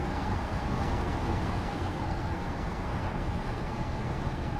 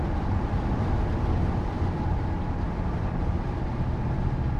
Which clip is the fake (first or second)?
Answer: first